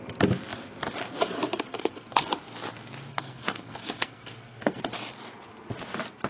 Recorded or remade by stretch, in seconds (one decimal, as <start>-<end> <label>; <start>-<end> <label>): 0.0-1.7 recorded; 1.7-2.3 remade; 2.3-3.1 recorded; 3.1-4.8 remade; 4.8-6.3 recorded